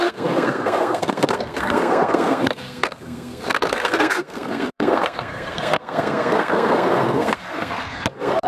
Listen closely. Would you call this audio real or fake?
fake